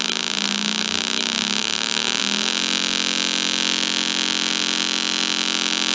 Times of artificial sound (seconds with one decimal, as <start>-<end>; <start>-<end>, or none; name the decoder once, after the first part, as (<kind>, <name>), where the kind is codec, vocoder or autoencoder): 1.6-2.2 (codec, DAC)